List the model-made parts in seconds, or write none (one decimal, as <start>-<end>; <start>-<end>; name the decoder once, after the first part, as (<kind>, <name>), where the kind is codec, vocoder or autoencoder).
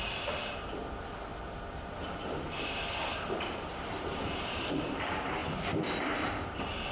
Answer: 0.0-5.4 (vocoder, BigVGAN v2); 5.9-6.9